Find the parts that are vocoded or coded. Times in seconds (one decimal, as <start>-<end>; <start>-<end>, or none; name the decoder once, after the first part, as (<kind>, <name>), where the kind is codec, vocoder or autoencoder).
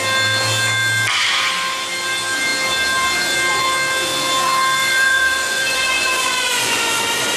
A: 4.8-7.0 (vocoder, Vocos)